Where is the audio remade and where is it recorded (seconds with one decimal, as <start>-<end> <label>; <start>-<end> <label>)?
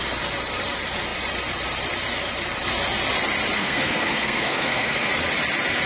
0.0-3.6 recorded; 3.6-5.1 remade; 5.1-5.9 recorded